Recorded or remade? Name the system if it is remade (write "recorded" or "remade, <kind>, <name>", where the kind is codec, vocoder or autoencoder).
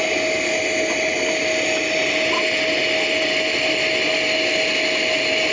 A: recorded